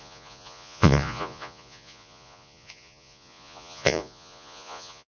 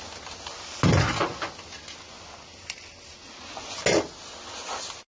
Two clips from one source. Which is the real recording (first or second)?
second